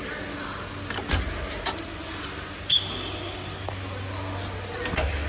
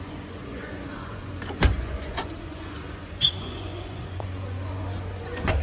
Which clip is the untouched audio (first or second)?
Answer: first